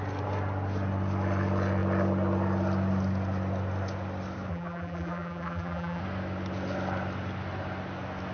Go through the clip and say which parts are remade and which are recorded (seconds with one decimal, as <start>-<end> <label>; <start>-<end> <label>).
0.0-4.5 recorded; 4.5-6.0 remade; 6.0-8.3 recorded